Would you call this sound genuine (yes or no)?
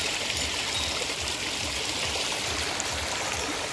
yes